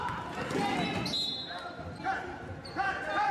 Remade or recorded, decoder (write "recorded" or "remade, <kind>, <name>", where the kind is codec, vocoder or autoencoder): recorded